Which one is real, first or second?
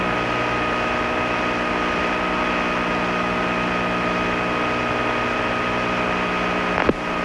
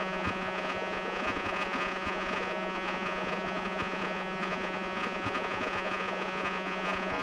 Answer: first